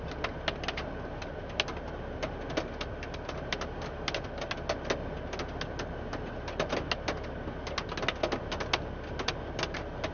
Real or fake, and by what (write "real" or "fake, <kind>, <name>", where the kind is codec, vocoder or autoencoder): real